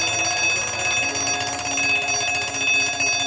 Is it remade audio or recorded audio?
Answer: recorded